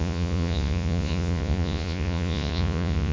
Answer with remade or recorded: remade